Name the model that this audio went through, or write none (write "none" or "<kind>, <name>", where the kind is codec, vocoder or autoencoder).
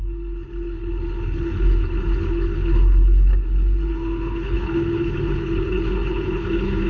codec, HILCodec